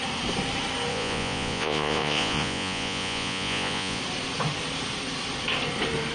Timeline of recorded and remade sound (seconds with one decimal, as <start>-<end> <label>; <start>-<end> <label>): 0.0-0.9 recorded; 0.9-4.0 remade; 4.0-6.1 recorded